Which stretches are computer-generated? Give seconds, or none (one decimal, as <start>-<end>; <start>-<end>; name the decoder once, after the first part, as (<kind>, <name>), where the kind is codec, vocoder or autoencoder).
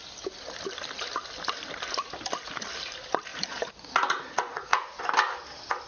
3.3-5.0 (vocoder, Vocos)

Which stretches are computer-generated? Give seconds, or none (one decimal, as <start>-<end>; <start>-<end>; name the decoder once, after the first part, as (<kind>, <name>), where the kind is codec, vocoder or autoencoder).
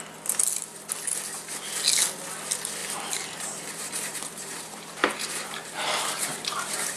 2.8-7.0 (vocoder, BigVGAN v2)